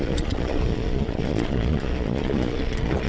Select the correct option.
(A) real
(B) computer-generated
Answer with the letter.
B